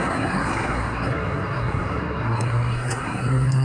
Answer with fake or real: fake